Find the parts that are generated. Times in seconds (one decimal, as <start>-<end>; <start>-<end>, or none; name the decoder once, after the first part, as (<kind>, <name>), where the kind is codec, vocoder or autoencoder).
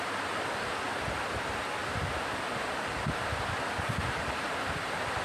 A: 0.0-1.8 (vocoder, BigVGAN v2); 2.9-5.2